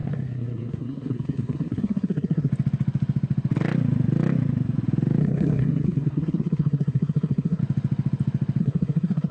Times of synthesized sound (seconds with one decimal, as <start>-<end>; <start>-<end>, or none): 0.0-2.5; 5.2-7.6; 8.6-9.3